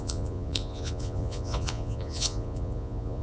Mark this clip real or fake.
fake